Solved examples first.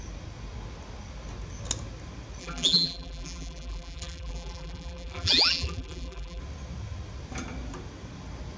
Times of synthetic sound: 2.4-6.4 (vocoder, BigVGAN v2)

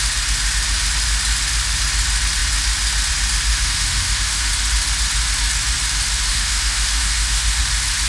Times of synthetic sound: 3.5-4.5 (autoencoder, DAC-VAE); 6.3-7.6